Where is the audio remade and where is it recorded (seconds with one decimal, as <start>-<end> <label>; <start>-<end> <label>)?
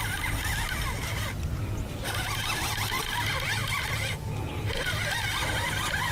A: 0.0-6.1 recorded